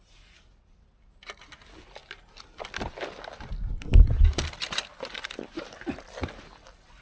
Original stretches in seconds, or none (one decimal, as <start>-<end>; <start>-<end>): 0.0-7.0

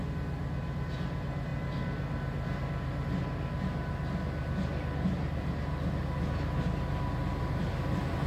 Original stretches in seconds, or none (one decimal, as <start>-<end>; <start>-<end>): 0.0-8.3

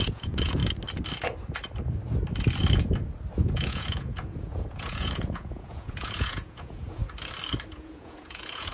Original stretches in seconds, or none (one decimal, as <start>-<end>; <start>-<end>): 0.6-3.4; 7.0-7.7

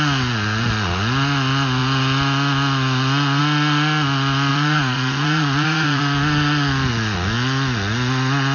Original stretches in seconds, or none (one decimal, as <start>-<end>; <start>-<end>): 0.0-4.5; 6.0-8.5

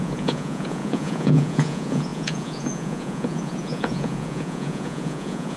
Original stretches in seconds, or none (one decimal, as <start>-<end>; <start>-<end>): none